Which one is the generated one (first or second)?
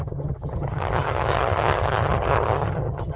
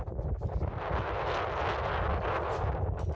first